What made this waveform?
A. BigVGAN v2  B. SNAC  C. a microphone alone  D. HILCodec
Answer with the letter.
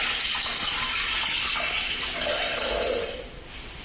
C